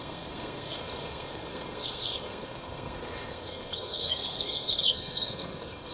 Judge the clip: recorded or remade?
remade